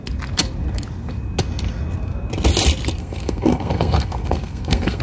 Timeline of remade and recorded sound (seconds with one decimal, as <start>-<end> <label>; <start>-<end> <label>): 0.0-3.0 recorded; 3.0-5.0 remade